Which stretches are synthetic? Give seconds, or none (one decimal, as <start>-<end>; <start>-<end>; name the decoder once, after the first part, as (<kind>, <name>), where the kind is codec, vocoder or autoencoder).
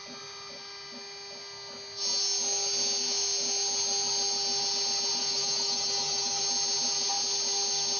5.2-6.4 (autoencoder, DAC-VAE)